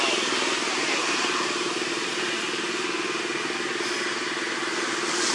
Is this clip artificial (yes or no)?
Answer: no